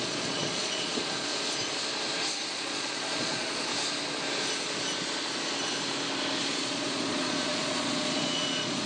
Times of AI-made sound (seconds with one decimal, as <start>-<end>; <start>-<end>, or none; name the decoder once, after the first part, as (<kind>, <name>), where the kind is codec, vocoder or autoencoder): 0.0-1.3 (vocoder, Vocos); 2.5-3.7; 6.4-8.9